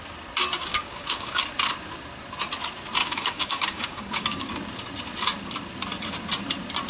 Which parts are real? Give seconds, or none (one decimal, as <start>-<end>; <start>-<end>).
0.0-0.7; 1.4-3.0; 4.5-6.9